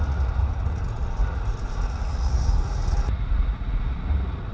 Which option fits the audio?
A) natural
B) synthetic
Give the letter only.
B